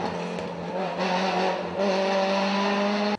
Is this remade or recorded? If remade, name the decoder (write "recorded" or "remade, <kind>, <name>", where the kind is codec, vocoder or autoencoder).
recorded